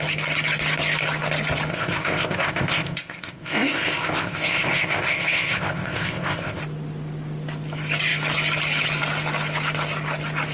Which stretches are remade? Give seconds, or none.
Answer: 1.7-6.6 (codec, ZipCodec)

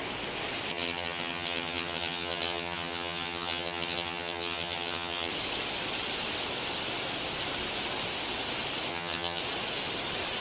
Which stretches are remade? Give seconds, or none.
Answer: 0.7-5.3 (vocoder, HiFi-GAN); 8.9-9.4

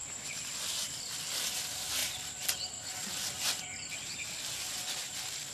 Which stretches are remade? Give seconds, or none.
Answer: none

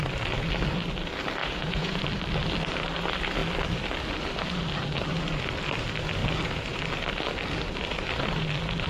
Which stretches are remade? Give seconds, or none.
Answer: 1.4-2.0 (vocoder, Vocos)

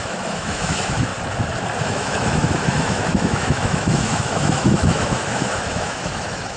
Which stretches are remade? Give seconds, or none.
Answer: 0.0-1.1 (autoencoder, DAC-VAE); 1.8-6.6